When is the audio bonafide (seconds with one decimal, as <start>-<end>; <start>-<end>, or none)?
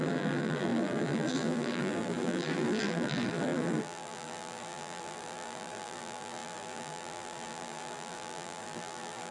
none